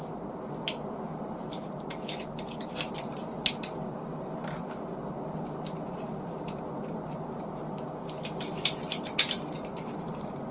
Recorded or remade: remade